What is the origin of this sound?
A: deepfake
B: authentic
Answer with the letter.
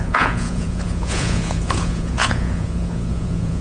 A